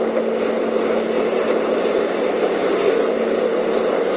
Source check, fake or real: real